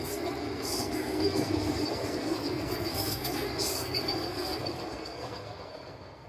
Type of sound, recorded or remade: remade